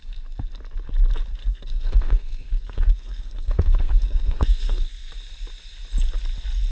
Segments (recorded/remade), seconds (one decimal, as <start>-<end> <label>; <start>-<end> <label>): 0.0-1.4 recorded; 1.4-5.1 remade; 5.1-6.7 recorded